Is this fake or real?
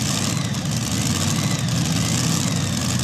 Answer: real